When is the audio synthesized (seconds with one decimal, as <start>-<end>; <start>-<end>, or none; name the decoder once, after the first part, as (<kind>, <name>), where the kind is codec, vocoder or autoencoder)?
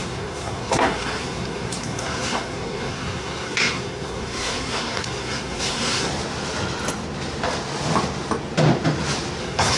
0.0-6.1 (codec, SNAC); 9.4-9.8